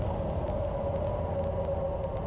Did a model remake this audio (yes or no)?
no